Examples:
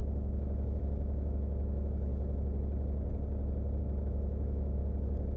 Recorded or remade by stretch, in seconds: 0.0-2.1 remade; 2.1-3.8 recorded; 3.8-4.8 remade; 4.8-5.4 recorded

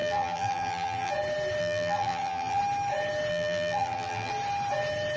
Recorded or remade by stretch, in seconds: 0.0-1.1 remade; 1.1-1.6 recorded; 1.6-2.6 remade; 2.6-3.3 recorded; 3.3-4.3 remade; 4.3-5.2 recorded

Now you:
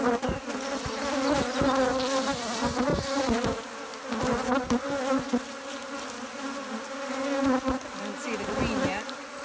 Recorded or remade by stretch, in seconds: 0.0-9.4 recorded

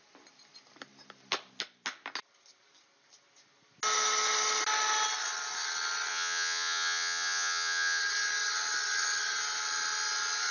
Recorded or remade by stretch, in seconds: 0.0-6.1 recorded; 6.1-8.0 remade; 8.0-10.5 recorded